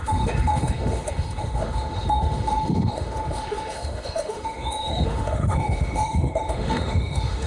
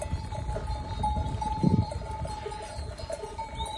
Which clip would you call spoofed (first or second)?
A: first